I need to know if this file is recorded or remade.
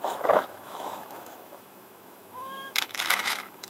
remade